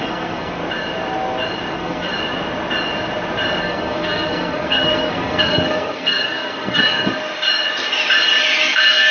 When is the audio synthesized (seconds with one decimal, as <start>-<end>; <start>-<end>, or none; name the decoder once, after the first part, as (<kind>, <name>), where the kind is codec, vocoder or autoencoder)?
0.0-0.6 (codec, SNAC); 1.7-2.1; 3.6-7.1; 8.7-9.1